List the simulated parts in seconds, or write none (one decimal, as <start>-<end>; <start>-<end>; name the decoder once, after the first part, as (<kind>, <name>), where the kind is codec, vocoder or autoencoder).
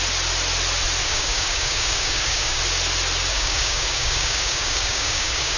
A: 1.0-2.6 (codec, DAC); 3.3-5.6